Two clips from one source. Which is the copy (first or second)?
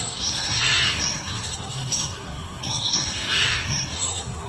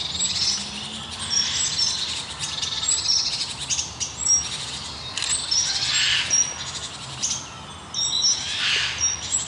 first